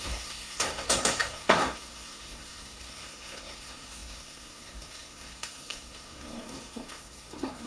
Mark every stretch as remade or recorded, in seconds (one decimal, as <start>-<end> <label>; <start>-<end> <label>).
0.0-7.7 remade